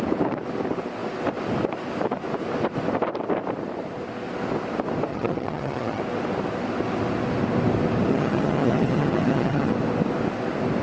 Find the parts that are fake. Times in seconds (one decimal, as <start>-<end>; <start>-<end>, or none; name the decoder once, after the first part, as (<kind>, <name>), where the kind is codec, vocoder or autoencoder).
5.1-6.0 (vocoder, HiFi-GAN); 8.1-9.7